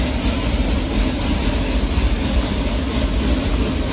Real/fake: real